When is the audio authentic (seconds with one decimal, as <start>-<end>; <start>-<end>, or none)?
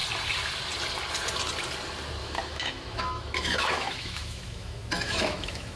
0.0-2.2